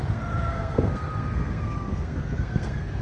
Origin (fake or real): fake